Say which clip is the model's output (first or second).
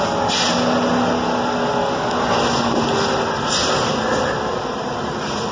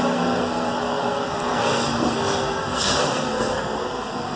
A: second